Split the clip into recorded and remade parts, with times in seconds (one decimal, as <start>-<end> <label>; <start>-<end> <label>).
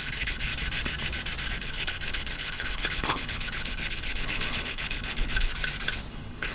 0.0-0.5 remade; 0.5-1.5 recorded; 1.5-5.5 remade; 5.5-6.1 recorded; 6.1-6.5 remade